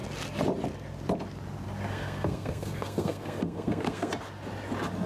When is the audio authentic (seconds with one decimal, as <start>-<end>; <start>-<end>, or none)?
0.0-1.9; 4.1-5.1